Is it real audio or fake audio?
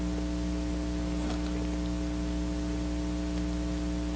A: real